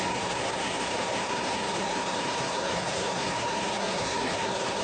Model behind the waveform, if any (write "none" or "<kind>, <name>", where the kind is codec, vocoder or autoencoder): codec, SNAC